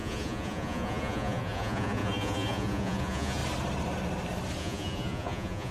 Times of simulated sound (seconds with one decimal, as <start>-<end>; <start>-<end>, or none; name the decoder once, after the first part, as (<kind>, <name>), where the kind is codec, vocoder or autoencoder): 0.0-3.4 (vocoder, Vocos); 4.6-5.7